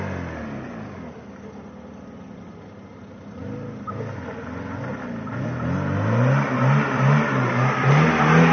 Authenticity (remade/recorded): recorded